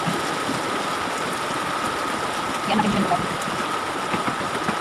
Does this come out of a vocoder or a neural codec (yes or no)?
no